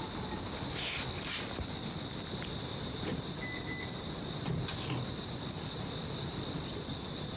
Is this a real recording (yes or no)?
yes